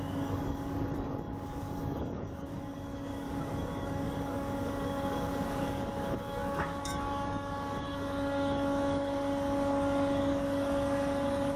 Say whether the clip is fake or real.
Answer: fake